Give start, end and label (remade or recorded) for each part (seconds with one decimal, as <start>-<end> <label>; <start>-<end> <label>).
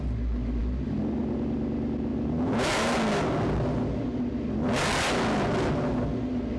0.0-6.6 recorded